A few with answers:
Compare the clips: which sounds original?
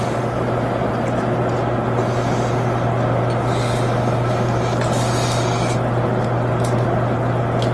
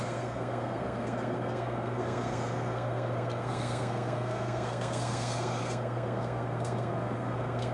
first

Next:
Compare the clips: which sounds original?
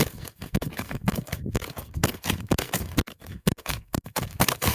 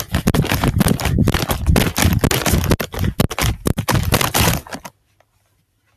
second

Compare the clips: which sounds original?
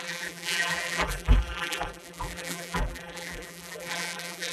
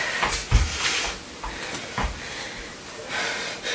second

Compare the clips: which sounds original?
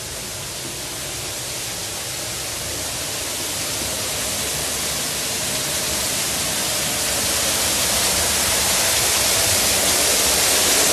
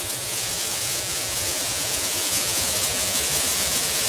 first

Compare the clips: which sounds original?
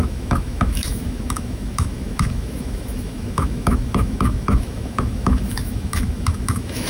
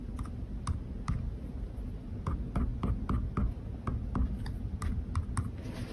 second